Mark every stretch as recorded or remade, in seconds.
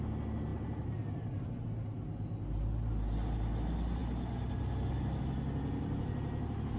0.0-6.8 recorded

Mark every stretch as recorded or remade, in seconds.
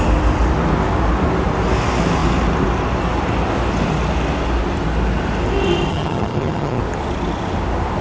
0.0-5.9 recorded; 5.9-6.8 remade; 6.8-8.0 recorded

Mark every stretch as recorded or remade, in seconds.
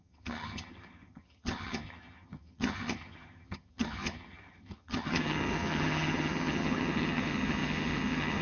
0.0-8.4 remade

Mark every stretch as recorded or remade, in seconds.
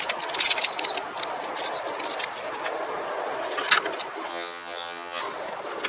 0.0-4.3 recorded; 4.3-5.2 remade; 5.2-5.9 recorded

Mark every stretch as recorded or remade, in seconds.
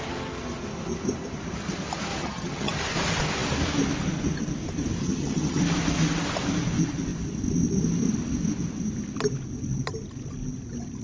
0.0-2.2 recorded; 2.2-2.7 remade; 2.7-5.0 recorded; 5.0-5.6 remade; 5.6-11.0 recorded